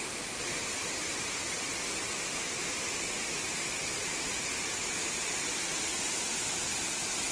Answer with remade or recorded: recorded